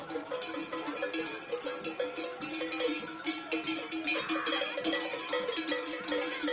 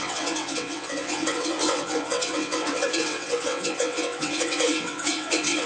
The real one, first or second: first